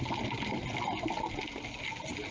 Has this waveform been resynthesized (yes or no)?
no